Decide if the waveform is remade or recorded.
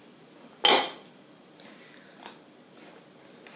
recorded